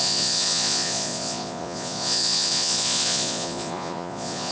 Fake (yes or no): yes